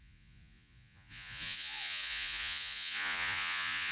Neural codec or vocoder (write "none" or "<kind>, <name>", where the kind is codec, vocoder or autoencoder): vocoder, Vocos